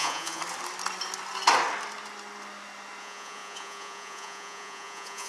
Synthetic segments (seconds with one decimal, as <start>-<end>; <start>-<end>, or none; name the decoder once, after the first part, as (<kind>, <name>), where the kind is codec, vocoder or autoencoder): 0.0-0.4 (vocoder, Vocos); 3.0-5.3